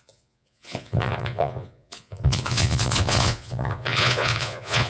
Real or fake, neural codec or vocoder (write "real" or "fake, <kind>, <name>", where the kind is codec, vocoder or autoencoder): fake, vocoder, Vocos